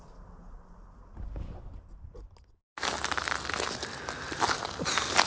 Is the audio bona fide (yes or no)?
yes